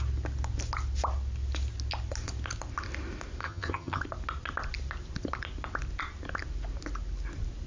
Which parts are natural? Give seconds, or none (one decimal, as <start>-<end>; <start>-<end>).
0.0-3.4; 4.0-7.7